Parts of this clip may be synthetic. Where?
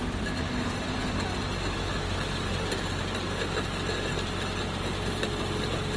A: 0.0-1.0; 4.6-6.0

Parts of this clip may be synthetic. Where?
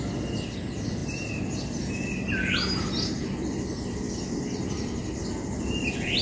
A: none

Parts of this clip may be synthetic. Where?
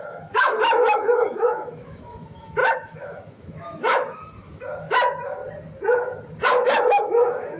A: 0.0-5.4; 6.5-7.6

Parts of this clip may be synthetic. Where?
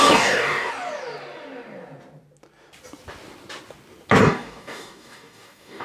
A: 0.0-0.7; 4.2-5.8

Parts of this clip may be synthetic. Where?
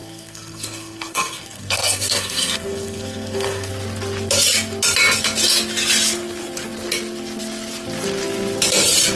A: 0.0-3.7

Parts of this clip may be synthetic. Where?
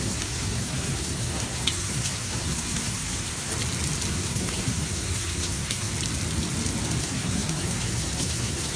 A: 0.0-3.5; 4.1-5.9; 7.0-8.8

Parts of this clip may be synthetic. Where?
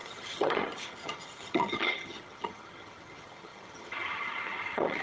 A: 0.0-5.0